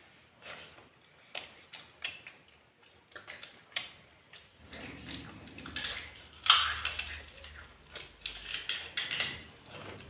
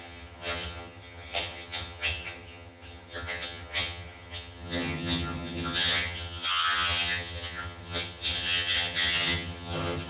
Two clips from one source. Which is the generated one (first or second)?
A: second